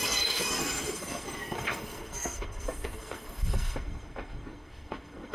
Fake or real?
fake